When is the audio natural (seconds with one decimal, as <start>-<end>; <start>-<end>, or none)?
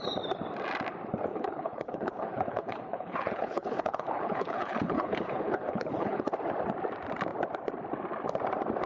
0.0-1.3; 6.3-8.9